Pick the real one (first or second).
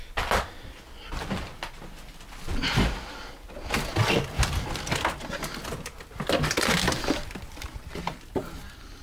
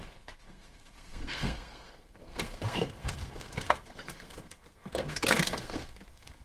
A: first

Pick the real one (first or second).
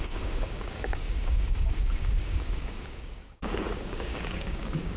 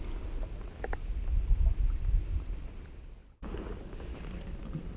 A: second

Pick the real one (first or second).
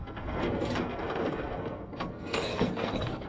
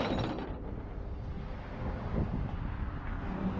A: second